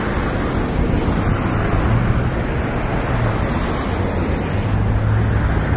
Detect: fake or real real